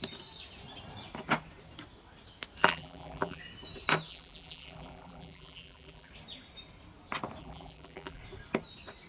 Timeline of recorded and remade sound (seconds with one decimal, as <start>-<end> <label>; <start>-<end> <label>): 0.0-2.6 recorded; 2.6-3.4 remade; 3.4-4.1 recorded; 4.1-6.1 remade; 6.1-7.4 recorded; 7.4-8.2 remade; 8.2-9.1 recorded